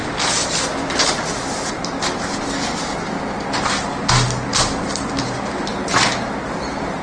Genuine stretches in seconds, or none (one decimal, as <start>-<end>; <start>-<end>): 0.0-7.0

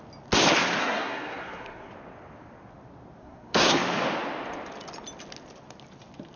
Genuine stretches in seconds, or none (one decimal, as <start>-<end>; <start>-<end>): 0.0-0.8; 1.9-3.2; 3.8-6.4

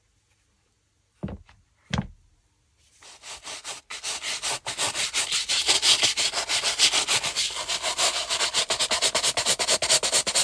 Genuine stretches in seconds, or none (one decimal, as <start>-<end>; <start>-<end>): 0.0-8.2; 8.8-10.4

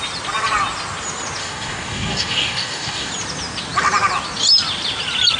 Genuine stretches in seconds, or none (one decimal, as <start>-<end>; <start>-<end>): 0.0-1.4; 3.1-5.4